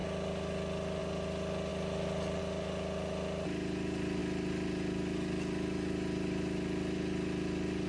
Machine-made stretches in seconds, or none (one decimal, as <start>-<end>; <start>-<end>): none